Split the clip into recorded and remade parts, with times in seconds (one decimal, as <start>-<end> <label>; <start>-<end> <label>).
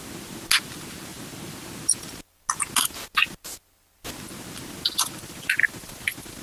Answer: 0.0-6.4 recorded